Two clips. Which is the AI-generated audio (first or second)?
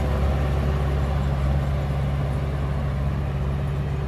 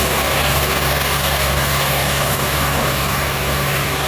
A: second